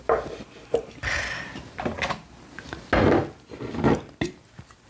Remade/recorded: recorded